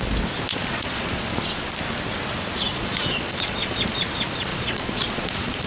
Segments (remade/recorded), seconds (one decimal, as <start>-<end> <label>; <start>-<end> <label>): 0.0-0.5 recorded; 0.5-1.2 remade; 1.2-2.7 recorded; 2.7-3.8 remade; 3.8-4.5 recorded; 4.5-5.7 remade